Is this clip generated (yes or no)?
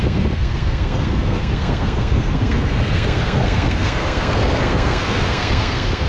yes